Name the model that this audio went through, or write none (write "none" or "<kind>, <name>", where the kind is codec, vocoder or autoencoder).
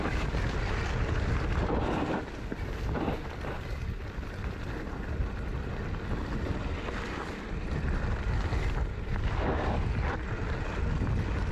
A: none